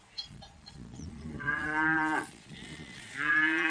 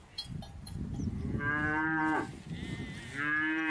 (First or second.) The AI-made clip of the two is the first